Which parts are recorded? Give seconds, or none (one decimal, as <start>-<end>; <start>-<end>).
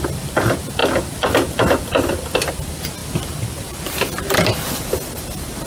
0.0-3.0; 4.8-5.7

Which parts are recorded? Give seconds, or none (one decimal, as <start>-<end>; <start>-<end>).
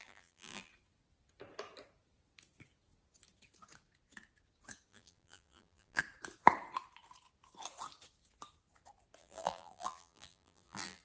0.7-4.9; 6.0-9.2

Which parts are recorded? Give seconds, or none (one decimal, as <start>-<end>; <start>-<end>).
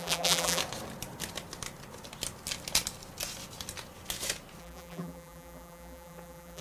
0.6-4.6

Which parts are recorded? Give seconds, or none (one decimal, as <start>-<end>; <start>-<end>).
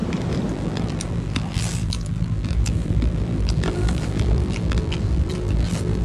0.0-0.5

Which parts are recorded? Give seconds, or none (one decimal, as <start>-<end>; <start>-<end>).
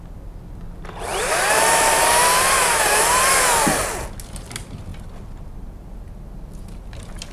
0.0-1.1; 3.5-7.3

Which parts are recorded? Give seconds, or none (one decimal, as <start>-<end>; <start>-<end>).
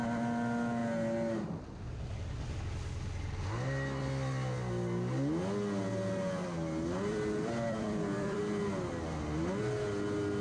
0.0-7.1; 8.4-10.4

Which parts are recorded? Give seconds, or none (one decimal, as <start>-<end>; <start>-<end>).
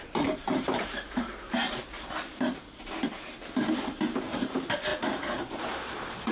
1.3-2.3